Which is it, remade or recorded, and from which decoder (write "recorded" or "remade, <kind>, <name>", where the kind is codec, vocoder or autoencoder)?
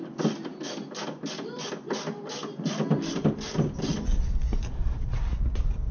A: recorded